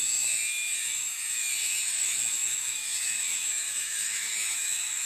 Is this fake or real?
fake